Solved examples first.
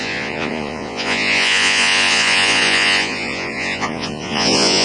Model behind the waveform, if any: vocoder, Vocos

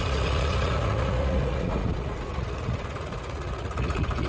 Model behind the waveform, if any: vocoder, Vocos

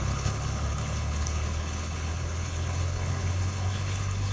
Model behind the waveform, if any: codec, HILCodec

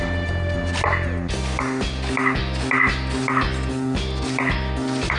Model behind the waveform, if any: none